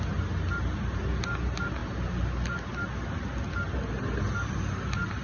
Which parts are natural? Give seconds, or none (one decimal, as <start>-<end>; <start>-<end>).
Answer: 0.0-5.2